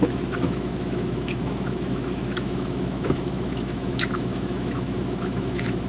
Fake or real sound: fake